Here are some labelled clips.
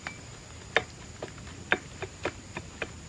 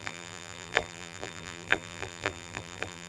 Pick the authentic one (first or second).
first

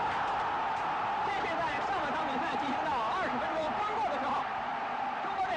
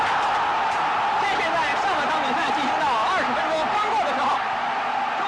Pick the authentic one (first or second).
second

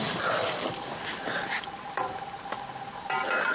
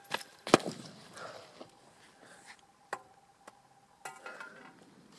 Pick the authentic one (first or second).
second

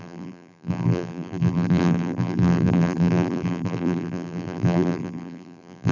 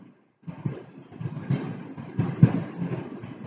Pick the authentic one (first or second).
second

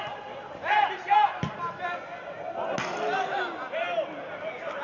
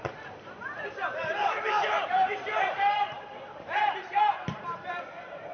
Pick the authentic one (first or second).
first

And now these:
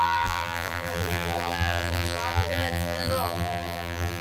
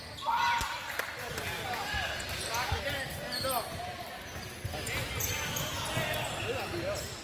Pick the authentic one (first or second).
second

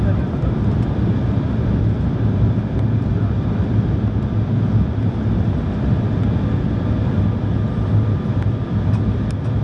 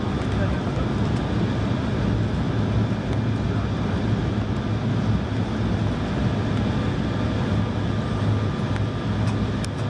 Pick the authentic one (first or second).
second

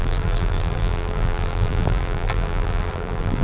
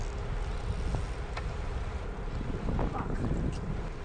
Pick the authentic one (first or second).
second